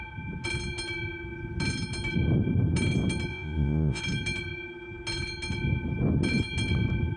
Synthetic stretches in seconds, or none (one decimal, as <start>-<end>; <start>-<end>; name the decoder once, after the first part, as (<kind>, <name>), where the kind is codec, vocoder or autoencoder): 3.3-4.0 (vocoder, Vocos)